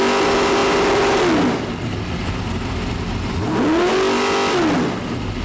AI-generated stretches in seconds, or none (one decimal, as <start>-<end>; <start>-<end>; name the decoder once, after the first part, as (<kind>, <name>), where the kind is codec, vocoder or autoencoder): none